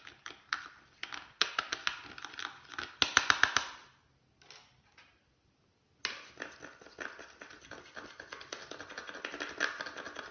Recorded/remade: recorded